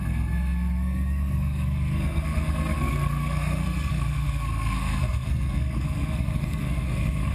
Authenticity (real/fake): fake